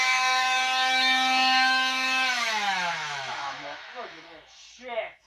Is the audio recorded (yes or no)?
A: no